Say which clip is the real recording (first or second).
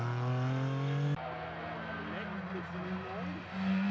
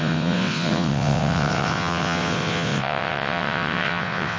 first